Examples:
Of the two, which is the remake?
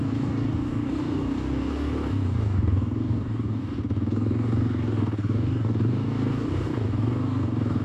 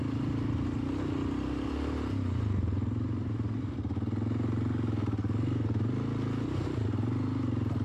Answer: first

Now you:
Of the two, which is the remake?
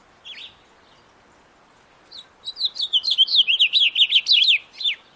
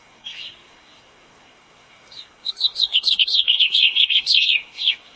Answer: second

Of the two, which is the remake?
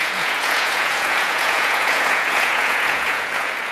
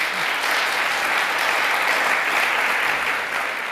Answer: first